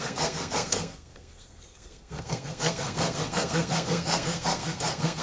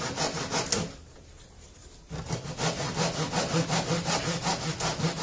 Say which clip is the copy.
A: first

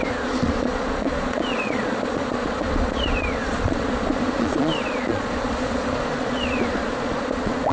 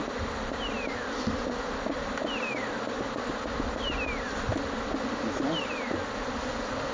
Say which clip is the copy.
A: first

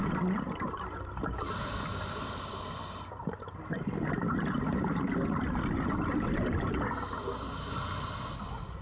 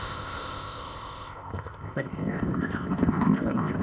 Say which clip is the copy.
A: second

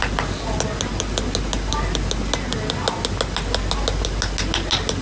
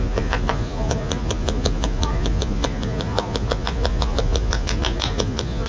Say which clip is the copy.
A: second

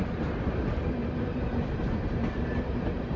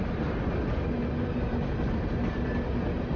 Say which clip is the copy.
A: first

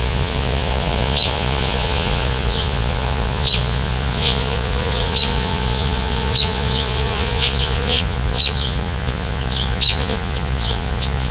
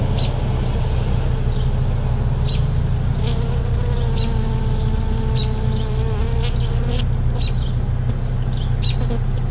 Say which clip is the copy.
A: first